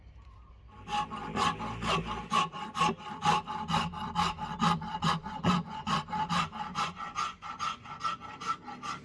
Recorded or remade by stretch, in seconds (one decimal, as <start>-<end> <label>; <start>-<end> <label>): 0.0-5.2 recorded; 5.2-5.9 remade; 5.9-6.7 recorded; 6.7-8.0 remade; 8.0-9.0 recorded